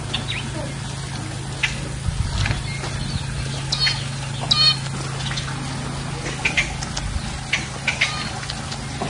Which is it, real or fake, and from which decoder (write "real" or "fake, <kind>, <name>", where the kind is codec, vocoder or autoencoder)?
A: real